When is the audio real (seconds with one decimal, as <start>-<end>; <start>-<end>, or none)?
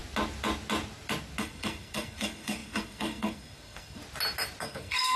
0.0-1.4; 4.0-4.6